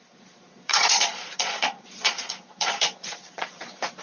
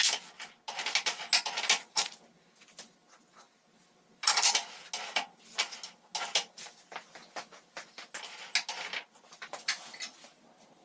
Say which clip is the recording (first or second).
second